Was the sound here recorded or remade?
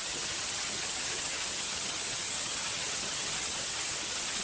remade